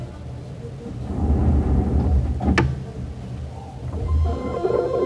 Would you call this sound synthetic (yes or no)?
no